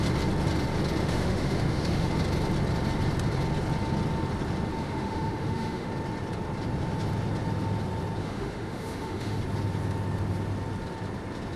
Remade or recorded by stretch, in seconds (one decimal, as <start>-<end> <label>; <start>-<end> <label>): 0.0-1.0 recorded; 1.0-2.1 remade; 2.1-4.8 recorded; 4.8-5.9 remade; 5.9-8.2 recorded; 8.2-9.4 remade; 9.4-11.6 recorded

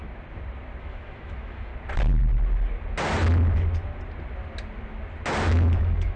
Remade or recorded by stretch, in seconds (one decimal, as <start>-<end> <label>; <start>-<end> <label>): 0.0-0.8 recorded; 0.8-1.7 remade; 1.7-5.4 recorded; 5.4-6.2 remade